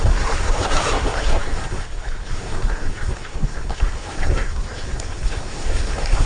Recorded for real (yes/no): no